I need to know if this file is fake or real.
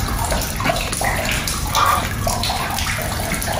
real